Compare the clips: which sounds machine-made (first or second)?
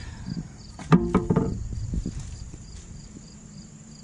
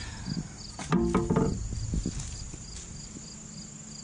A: first